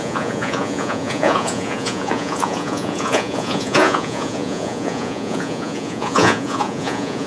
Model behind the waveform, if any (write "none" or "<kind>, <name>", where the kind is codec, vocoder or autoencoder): vocoder, Vocos